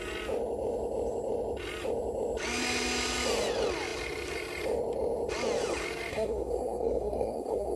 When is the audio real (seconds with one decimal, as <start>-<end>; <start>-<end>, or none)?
0.0-6.1